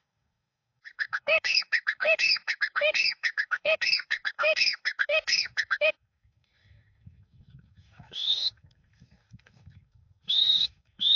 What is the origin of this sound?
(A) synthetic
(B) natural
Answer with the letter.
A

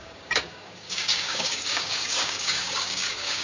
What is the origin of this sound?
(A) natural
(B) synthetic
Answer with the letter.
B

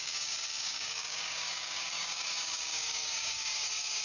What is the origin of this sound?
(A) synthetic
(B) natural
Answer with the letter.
A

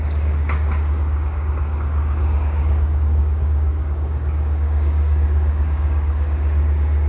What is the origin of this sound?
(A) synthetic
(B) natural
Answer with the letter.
A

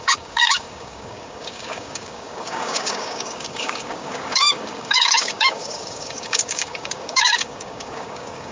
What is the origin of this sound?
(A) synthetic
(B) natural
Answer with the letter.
A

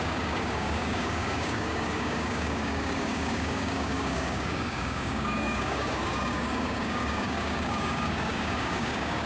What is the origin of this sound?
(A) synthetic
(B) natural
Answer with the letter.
A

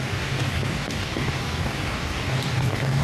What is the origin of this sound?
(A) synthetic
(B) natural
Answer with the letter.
A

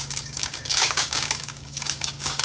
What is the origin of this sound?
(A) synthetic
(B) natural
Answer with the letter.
A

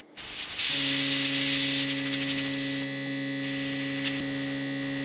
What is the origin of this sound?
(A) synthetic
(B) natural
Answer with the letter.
B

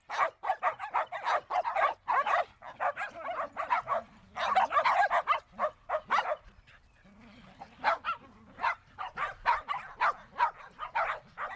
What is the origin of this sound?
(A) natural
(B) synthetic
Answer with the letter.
A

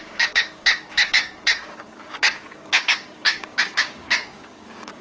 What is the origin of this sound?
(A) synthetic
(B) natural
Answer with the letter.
A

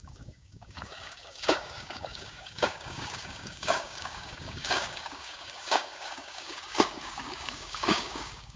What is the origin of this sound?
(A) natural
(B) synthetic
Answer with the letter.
B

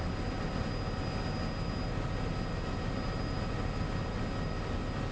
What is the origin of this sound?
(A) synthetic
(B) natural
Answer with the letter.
B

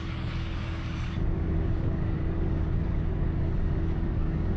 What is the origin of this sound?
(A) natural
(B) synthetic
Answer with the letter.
B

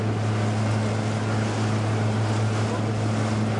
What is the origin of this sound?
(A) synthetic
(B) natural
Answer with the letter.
B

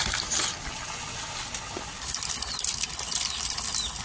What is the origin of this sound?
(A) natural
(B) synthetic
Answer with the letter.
A